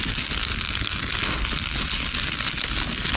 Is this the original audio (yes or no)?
yes